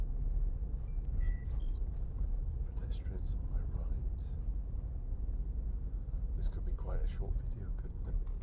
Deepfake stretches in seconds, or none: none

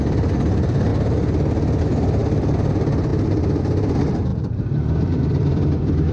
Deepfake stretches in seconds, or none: 0.0-0.9 (vocoder, BigVGAN v2); 1.8-6.1

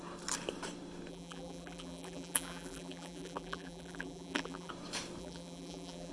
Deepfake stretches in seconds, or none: 1.1-4.7 (vocoder, BigVGAN v2); 5.2-6.1

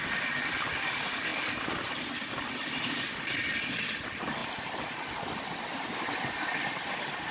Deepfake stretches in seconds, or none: 0.0-1.3 (vocoder, BigVGAN v2); 2.3-7.3

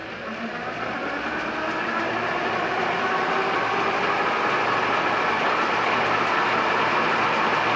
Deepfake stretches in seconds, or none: 0.0-1.1 (vocoder, BigVGAN v2)

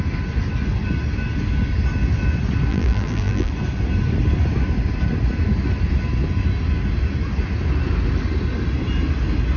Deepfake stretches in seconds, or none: 2.7-3.5 (vocoder, BigVGAN v2)

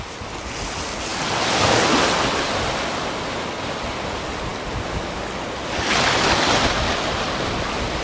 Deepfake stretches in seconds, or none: none

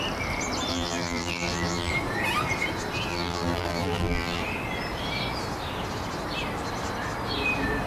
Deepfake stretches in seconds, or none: 0.7-1.9 (vocoder, BigVGAN v2); 3.1-4.4